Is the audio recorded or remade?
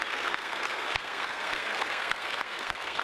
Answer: remade